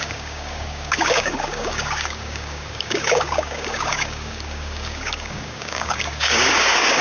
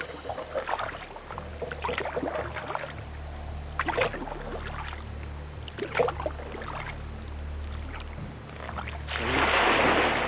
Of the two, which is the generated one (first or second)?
first